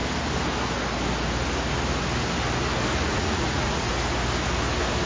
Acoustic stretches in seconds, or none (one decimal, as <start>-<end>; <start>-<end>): 0.0-3.1; 3.9-5.1